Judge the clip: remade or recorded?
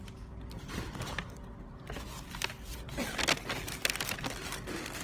recorded